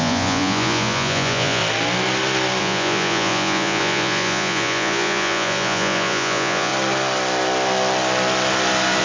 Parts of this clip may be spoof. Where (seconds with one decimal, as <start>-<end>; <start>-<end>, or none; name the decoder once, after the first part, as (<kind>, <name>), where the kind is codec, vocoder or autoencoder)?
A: 0.0-1.6 (vocoder, Vocos); 2.6-6.7